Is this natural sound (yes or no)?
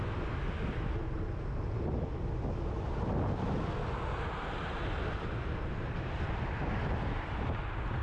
yes